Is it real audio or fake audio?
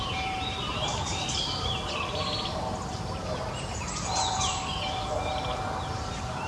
fake